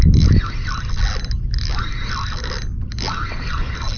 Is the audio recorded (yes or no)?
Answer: yes